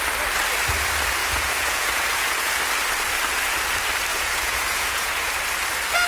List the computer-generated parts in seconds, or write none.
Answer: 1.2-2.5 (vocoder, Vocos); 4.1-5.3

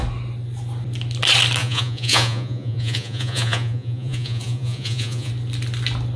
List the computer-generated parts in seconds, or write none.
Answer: 1.6-5.3 (vocoder, Vocos)